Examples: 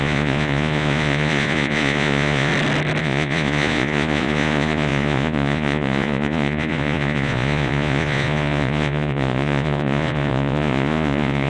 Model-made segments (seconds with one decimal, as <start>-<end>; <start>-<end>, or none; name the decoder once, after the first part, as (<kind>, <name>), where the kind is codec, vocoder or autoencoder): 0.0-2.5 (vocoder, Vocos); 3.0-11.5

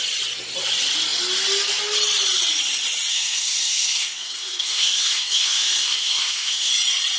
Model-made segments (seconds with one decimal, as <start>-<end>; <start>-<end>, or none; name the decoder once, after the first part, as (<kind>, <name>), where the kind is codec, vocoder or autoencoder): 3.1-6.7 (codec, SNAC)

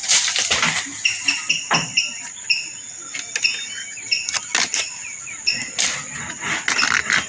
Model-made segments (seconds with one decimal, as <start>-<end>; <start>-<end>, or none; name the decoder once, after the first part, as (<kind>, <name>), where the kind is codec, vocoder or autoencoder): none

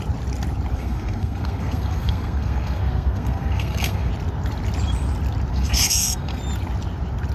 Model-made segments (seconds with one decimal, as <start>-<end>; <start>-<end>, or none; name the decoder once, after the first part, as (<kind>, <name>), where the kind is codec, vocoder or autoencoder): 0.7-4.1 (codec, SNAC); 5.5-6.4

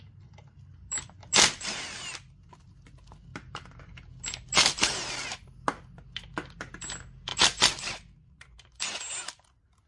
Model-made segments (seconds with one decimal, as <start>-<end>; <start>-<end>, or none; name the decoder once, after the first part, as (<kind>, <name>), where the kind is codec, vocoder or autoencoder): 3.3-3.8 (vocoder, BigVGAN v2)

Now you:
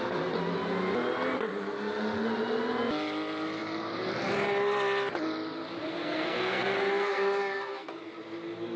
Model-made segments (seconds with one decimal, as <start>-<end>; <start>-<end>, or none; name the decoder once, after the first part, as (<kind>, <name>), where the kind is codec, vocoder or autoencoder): 5.9-7.9 (codec, SNAC)

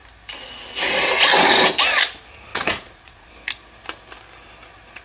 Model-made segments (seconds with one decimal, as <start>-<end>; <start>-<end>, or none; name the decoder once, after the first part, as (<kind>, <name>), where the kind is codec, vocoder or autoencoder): 2.5-3.3 (vocoder, Vocos)

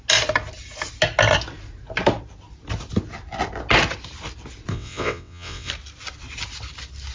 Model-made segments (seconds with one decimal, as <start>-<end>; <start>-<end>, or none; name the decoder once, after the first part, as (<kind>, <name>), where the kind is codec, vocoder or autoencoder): 4.7-5.7 (vocoder, WaveNeXt)